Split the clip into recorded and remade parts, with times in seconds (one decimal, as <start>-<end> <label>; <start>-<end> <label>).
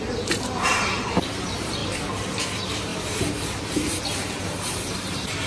0.0-1.8 remade; 1.8-2.4 recorded; 2.4-5.5 remade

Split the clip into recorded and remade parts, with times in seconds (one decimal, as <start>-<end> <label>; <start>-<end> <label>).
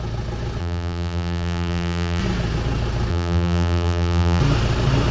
0.0-0.6 recorded; 0.6-2.2 remade; 2.2-3.1 recorded; 3.1-4.4 remade; 4.4-5.1 recorded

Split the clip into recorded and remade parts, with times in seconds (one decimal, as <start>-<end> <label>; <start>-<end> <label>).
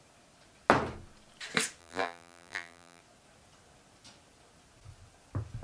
0.0-1.8 recorded; 1.8-3.0 remade; 3.0-5.6 recorded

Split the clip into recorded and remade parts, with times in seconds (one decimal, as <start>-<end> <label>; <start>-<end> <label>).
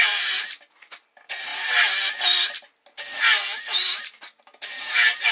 0.0-1.5 recorded; 1.5-2.1 remade; 2.1-5.3 recorded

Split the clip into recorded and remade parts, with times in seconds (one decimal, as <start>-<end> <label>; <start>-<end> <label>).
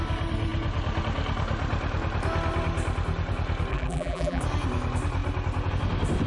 0.0-3.7 recorded; 3.7-4.4 remade; 4.4-6.3 recorded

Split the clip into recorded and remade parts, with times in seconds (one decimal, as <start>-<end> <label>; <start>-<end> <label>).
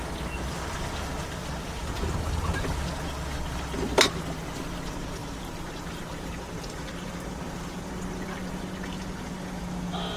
0.0-5.2 recorded; 5.2-7.9 remade; 7.9-10.2 recorded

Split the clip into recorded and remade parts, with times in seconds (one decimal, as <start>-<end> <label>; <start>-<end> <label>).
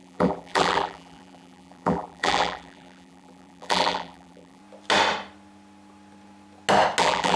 0.0-4.6 remade; 4.6-7.0 recorded; 7.0-7.4 remade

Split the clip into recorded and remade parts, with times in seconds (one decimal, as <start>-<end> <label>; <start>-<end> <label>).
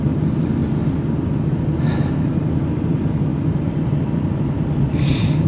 0.0-0.6 remade; 0.6-2.3 recorded; 2.3-5.5 remade